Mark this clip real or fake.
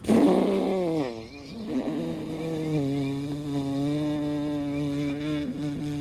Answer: real